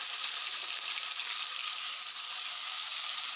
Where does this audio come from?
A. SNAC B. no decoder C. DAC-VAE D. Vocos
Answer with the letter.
B